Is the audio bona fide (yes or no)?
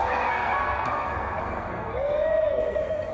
no